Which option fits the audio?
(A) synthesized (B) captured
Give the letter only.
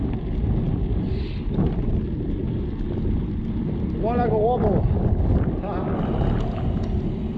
B